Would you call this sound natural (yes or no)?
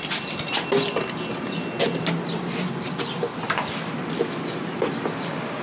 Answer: yes